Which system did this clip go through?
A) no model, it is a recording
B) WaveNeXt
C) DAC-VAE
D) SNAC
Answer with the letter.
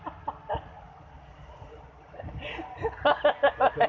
A